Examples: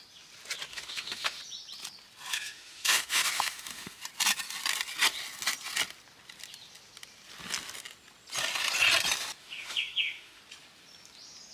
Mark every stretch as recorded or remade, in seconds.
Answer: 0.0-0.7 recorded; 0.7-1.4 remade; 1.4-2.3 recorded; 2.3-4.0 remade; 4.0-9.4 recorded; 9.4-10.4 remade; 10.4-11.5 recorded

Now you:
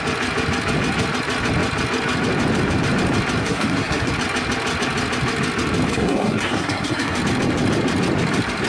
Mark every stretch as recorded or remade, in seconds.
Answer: 0.0-3.4 recorded; 3.4-4.1 remade; 4.1-5.9 recorded; 5.9-7.2 remade; 7.2-8.7 recorded